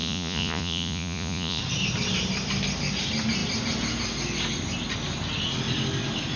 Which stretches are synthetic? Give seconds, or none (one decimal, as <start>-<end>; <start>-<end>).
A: 0.0-1.6